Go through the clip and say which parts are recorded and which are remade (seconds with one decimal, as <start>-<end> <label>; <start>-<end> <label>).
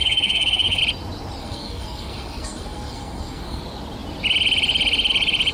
0.0-0.8 remade; 0.8-1.4 recorded; 1.4-3.6 remade; 3.6-5.5 recorded